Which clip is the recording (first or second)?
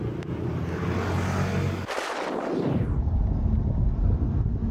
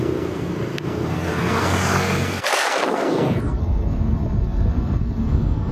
first